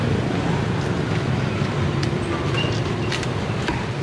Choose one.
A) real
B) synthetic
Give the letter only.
B